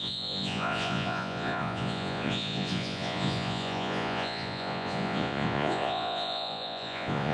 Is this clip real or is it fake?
fake